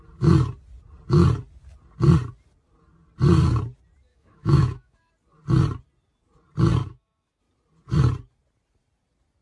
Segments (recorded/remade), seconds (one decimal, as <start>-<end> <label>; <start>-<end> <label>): 0.0-4.1 recorded; 4.1-5.1 remade; 5.1-6.8 recorded; 6.8-7.4 remade; 7.4-9.4 recorded